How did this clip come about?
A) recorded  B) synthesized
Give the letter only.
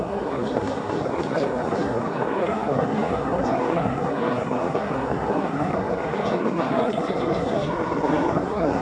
B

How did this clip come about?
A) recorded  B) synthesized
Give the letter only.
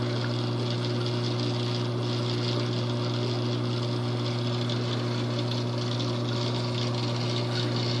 A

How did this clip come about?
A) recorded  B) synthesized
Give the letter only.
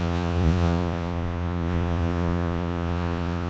B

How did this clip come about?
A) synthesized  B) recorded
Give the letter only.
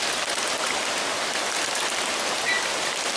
B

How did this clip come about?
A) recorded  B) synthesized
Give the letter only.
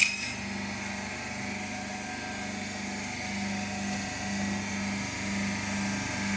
A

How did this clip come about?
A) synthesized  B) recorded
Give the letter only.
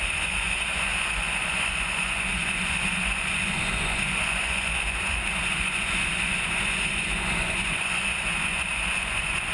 A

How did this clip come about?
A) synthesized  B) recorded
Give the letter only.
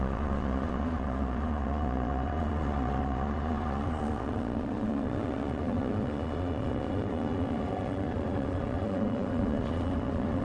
A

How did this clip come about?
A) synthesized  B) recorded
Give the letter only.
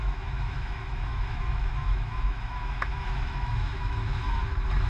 A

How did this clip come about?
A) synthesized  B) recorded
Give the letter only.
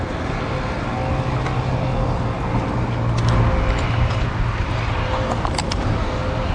B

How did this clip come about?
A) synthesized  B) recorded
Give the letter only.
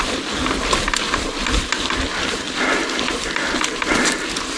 B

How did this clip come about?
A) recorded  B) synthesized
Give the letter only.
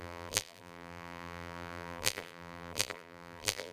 B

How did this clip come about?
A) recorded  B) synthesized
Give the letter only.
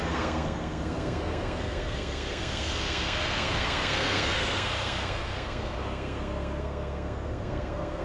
B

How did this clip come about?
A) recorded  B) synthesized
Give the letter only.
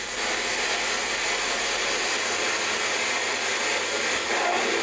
A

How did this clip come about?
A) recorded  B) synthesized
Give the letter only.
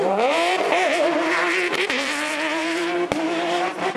B